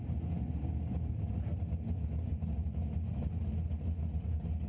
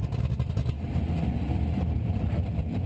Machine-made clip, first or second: second